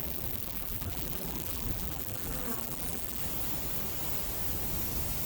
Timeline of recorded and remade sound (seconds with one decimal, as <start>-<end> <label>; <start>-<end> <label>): 0.0-3.2 remade; 3.2-5.3 recorded